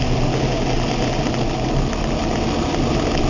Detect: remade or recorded recorded